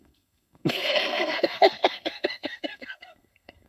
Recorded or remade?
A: remade